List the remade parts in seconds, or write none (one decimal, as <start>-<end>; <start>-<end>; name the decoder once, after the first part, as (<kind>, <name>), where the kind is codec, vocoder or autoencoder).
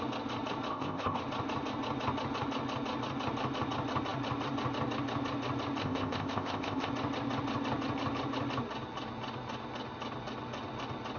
0.7-1.2 (codec, ZipCodec); 5.8-6.9